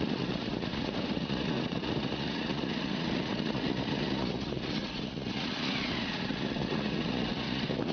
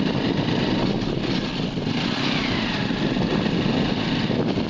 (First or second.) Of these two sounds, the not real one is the first